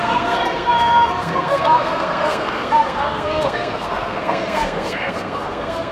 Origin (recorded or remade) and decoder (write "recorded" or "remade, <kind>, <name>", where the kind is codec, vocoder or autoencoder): remade, codec, SNAC